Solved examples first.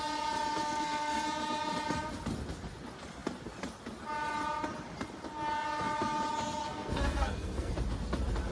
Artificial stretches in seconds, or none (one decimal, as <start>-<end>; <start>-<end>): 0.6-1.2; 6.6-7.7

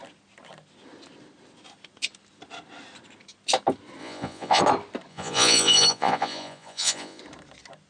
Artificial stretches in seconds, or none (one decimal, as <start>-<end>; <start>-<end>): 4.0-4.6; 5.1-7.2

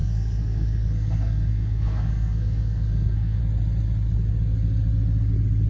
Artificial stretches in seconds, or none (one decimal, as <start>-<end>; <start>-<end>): 0.0-3.4

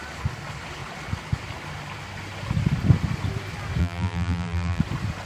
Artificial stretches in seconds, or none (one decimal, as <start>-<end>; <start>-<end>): 3.8-4.8